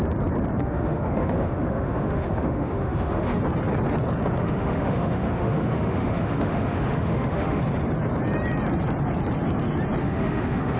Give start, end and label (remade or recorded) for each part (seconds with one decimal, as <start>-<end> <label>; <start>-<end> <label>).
0.0-0.6 recorded; 0.6-3.4 remade; 3.4-4.4 recorded; 4.4-7.6 remade; 7.6-10.0 recorded; 10.0-10.8 remade